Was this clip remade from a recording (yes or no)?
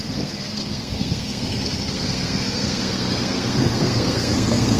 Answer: yes